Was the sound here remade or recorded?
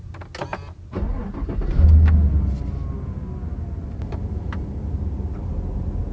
recorded